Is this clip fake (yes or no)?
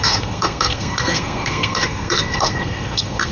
yes